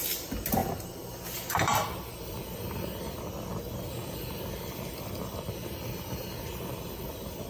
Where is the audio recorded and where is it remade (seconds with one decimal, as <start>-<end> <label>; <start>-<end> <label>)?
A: 0.0-7.5 recorded